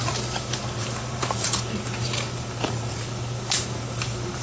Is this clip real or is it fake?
fake